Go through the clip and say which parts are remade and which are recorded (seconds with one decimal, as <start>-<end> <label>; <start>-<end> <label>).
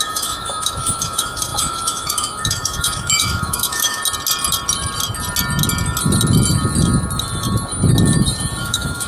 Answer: 0.0-4.0 remade; 4.0-8.6 recorded; 8.6-9.1 remade